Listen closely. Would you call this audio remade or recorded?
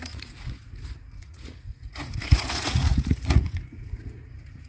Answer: remade